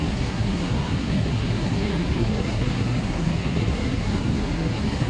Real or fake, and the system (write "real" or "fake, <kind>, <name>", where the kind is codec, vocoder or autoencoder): fake, codec, SNAC